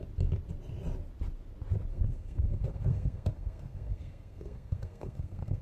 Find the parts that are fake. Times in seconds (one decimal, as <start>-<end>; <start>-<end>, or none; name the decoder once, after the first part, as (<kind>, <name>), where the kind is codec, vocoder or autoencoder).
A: 1.9-5.6 (codec, SNAC)